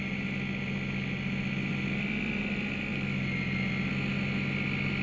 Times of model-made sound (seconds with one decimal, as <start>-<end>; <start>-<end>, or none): 1.7-2.4